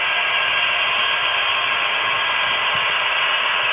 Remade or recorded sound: recorded